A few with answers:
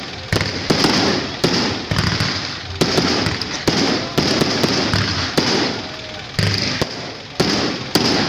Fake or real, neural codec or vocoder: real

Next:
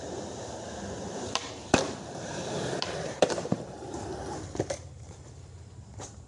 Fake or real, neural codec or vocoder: fake, vocoder, BigVGAN v2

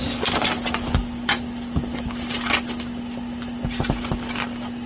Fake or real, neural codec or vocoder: real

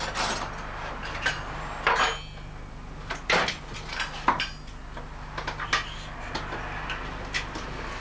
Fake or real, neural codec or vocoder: real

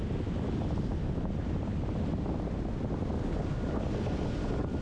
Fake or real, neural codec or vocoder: real